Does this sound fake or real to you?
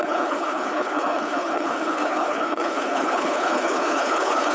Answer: fake